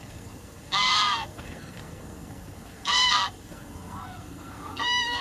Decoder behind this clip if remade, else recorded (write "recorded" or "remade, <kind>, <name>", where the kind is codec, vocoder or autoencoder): remade, codec, SNAC